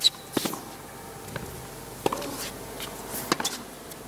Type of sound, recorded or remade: recorded